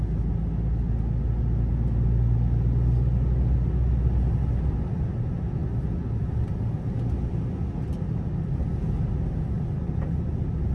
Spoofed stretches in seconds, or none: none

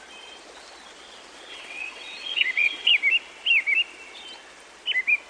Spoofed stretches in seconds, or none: 1.5-2.9 (vocoder, WaveNeXt)

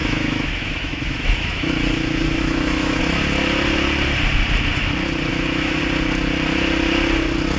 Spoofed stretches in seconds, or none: 0.0-3.0 (autoencoder, DAC-VAE); 5.3-5.8

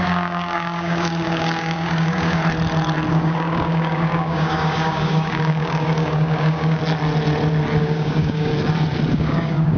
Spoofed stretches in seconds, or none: 0.0-2.4 (codec, DAC); 3.1-6.8; 7.8-8.5; 9.1-9.8